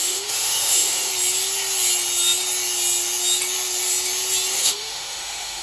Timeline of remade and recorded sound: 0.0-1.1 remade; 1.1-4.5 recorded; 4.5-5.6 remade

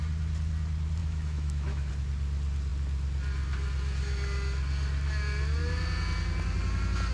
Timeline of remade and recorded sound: 0.0-1.0 recorded; 1.0-1.9 remade; 1.9-7.1 recorded

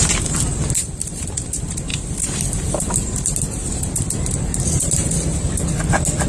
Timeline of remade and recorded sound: 0.0-6.3 recorded

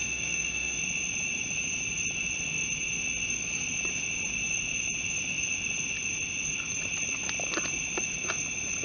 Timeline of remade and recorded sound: 0.0-0.8 remade; 0.8-8.8 recorded

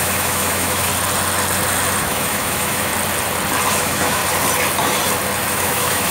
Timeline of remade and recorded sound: 0.0-0.9 remade; 0.9-2.0 recorded; 2.0-2.9 remade; 2.9-3.7 recorded; 3.7-4.2 remade; 4.2-5.5 recorded; 5.5-6.1 remade

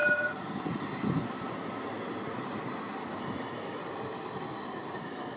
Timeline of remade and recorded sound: 0.0-3.2 recorded; 3.2-3.8 remade; 3.8-5.0 recorded; 5.0-5.4 remade

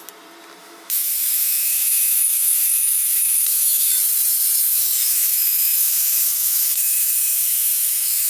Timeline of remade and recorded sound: 0.0-0.6 recorded; 0.6-3.9 remade; 3.9-4.7 recorded; 4.7-8.3 remade

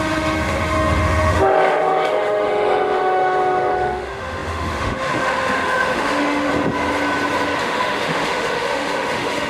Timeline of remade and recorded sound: 0.0-6.5 remade; 6.5-7.6 recorded; 7.6-9.5 remade